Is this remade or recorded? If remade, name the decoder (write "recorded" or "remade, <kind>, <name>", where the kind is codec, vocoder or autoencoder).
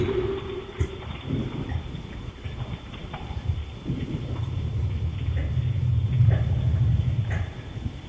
recorded